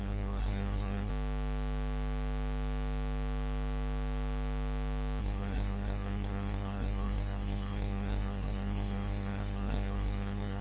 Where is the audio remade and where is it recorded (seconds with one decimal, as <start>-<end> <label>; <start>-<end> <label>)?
0.0-1.1 remade; 1.1-5.2 recorded; 5.2-10.6 remade

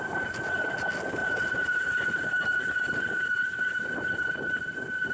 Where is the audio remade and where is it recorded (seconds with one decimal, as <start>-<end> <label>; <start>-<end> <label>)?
0.0-5.1 recorded

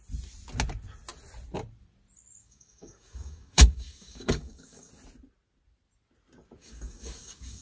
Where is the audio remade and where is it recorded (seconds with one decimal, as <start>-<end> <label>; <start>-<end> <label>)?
0.0-2.4 recorded; 2.4-4.9 remade; 4.9-6.6 recorded; 6.6-7.6 remade